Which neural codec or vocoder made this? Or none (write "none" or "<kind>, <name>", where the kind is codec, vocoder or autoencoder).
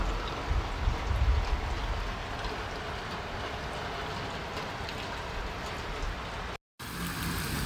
none